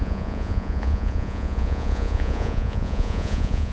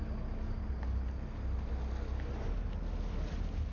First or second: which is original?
second